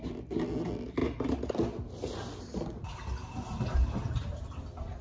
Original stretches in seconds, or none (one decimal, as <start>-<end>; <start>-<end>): 0.0-5.0